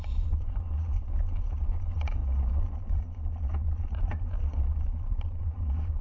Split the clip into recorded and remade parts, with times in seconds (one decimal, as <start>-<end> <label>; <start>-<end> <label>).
0.0-6.0 remade